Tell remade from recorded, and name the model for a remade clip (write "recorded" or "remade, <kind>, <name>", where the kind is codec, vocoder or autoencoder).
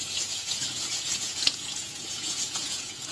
remade, vocoder, Vocos